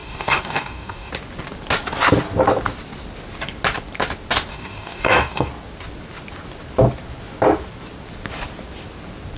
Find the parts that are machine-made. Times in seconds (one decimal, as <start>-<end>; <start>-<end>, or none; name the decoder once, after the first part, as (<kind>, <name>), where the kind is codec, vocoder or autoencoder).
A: 0.0-1.1 (codec, DAC); 4.5-5.5